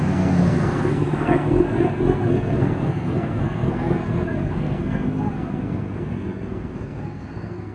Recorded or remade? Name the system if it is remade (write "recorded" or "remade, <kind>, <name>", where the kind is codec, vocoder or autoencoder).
remade, codec, SNAC